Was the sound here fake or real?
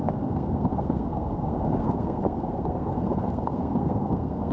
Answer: fake